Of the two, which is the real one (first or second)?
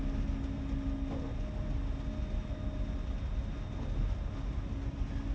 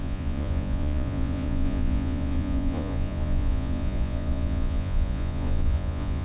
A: first